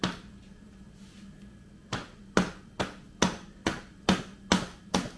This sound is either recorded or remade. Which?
recorded